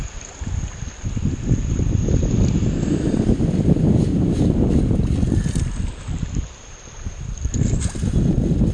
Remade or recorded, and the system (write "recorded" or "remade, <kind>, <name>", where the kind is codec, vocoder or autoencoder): recorded